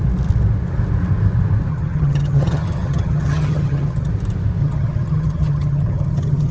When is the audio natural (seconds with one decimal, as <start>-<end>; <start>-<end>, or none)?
0.0-1.7; 4.1-4.6